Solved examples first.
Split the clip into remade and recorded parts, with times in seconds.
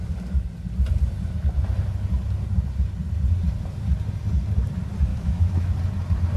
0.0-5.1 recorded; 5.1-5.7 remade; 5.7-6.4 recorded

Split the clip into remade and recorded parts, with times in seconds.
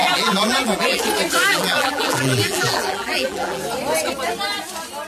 0.0-1.0 remade; 1.0-1.5 recorded; 1.5-3.6 remade; 3.6-5.1 recorded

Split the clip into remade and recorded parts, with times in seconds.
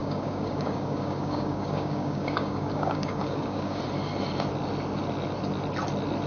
0.0-3.8 remade; 3.8-6.3 recorded